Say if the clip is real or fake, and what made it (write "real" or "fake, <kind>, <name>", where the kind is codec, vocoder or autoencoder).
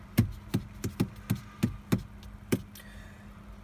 real